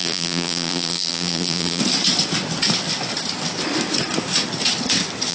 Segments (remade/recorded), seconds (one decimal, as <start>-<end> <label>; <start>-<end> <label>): 0.0-1.8 remade; 1.8-5.3 recorded